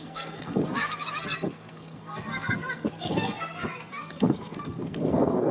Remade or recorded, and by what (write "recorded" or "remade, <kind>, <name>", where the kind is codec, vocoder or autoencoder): remade, codec, SNAC